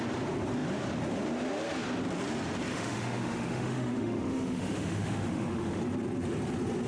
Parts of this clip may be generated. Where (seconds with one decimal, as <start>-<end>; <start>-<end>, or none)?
2.7-5.8